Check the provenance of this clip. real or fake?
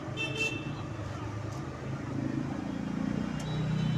real